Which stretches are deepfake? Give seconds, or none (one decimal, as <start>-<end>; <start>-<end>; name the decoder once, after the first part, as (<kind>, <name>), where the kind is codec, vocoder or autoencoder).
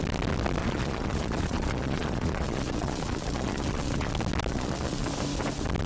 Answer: 0.6-4.1 (vocoder, Vocos); 4.5-5.1